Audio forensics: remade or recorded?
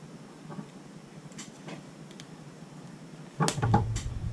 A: recorded